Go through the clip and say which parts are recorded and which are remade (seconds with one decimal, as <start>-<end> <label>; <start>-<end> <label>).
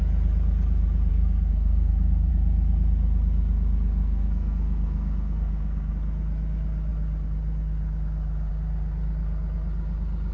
0.0-1.1 recorded; 1.1-2.3 remade; 2.3-4.0 recorded; 4.0-5.9 remade; 5.9-10.3 recorded